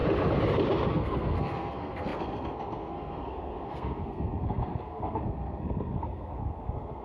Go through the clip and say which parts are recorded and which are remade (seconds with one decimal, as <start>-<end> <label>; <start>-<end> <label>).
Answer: 0.0-0.9 recorded; 0.9-7.0 remade